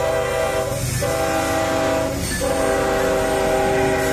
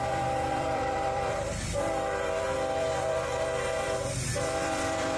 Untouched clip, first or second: first